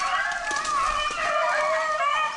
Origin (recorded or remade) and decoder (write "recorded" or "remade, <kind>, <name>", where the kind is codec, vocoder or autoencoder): recorded